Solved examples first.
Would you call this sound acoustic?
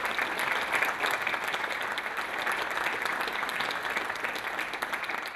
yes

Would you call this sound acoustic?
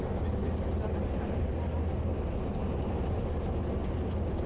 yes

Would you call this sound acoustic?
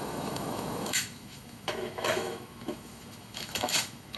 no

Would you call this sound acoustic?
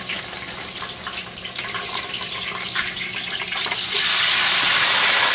yes